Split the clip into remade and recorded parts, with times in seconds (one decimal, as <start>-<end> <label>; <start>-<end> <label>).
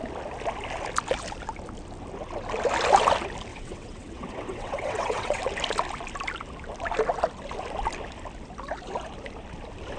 0.0-3.5 recorded; 3.5-5.4 remade; 5.4-10.0 recorded